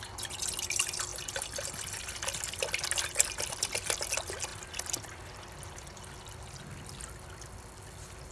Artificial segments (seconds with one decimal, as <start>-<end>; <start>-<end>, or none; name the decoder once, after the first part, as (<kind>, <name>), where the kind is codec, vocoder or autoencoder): none